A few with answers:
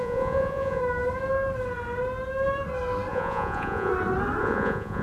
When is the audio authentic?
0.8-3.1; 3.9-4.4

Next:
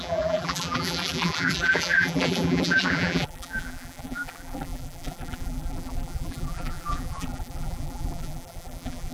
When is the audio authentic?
none

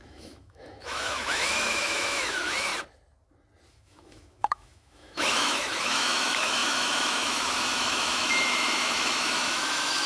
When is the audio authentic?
2.7-3.7

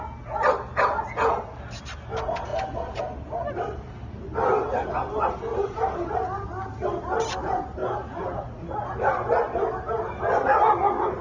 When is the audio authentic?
0.0-11.2

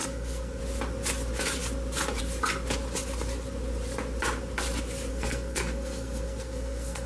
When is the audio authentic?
0.6-5.1

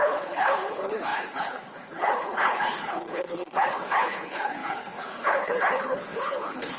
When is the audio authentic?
none

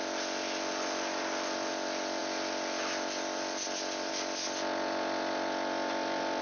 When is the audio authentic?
0.0-6.4